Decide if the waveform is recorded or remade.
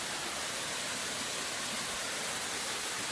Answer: recorded